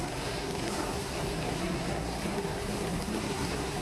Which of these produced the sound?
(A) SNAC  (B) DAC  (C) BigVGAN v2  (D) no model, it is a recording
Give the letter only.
A